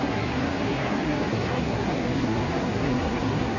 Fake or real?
fake